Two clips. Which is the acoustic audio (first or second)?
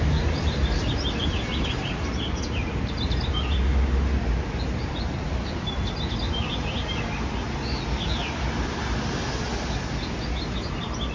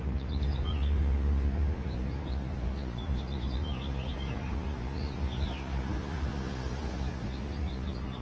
first